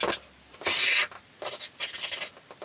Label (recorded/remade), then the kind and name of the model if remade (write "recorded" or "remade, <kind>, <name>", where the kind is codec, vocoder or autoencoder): recorded